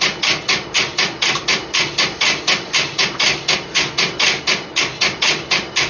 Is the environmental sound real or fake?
real